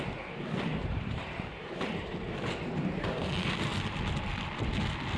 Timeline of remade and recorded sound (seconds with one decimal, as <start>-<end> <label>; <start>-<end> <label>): 0.0-0.7 recorded; 0.7-3.3 remade; 3.3-5.2 recorded

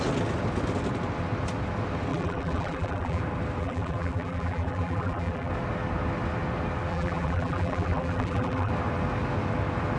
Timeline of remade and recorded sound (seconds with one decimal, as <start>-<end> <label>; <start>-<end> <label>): 0.0-2.1 recorded; 2.1-3.2 remade; 3.2-3.6 recorded; 3.6-5.5 remade; 5.5-6.9 recorded; 6.9-8.7 remade; 8.7-10.0 recorded

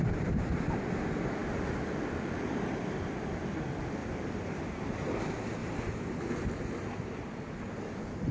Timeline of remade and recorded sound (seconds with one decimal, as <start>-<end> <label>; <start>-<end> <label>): 0.0-4.0 recorded; 4.0-4.6 remade; 4.6-8.3 recorded

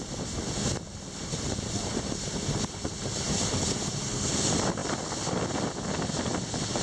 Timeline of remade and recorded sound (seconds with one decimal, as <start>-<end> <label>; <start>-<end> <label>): 0.0-0.9 recorded; 0.9-4.3 remade; 4.3-6.8 recorded

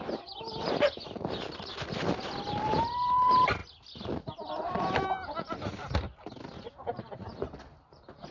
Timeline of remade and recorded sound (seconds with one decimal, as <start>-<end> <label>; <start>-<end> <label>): 0.0-8.3 recorded

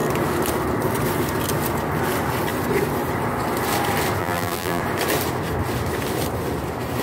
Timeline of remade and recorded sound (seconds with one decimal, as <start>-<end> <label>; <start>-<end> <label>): 0.0-4.2 recorded; 4.2-4.8 remade; 4.8-7.0 recorded